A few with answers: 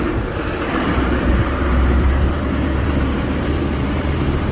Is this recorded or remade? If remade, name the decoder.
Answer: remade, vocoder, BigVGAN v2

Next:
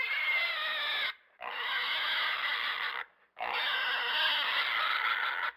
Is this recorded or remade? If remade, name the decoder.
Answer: recorded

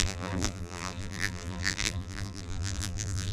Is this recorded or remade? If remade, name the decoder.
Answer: remade, vocoder, BigVGAN v2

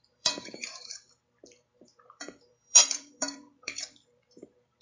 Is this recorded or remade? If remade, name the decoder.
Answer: remade, vocoder, BigVGAN v2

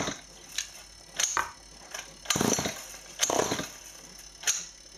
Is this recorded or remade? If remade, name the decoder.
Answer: recorded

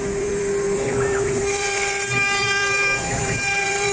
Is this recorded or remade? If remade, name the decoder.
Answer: remade, vocoder, BigVGAN v2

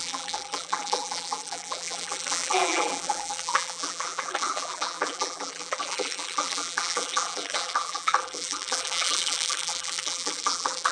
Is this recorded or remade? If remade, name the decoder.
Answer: remade, vocoder, BigVGAN v2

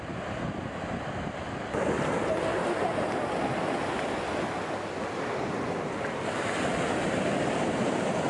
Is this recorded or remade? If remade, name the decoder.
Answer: recorded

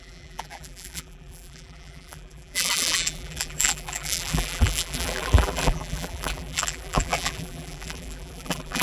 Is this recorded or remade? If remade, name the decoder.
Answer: remade, vocoder, BigVGAN v2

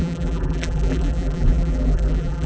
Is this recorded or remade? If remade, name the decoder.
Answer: remade, vocoder, BigVGAN v2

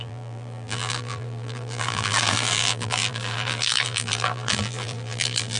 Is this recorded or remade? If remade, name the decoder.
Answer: remade, vocoder, BigVGAN v2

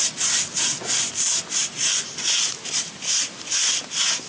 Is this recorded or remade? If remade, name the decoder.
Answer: recorded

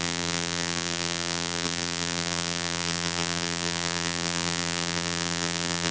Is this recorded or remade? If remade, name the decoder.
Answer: remade, vocoder, BigVGAN v2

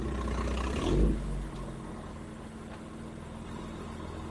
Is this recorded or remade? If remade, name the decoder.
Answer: recorded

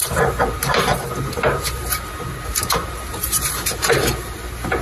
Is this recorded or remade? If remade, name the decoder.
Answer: remade, vocoder, BigVGAN v2